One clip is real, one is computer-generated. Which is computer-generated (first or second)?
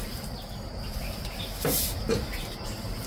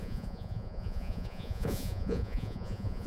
second